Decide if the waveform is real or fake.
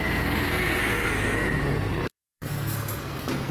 fake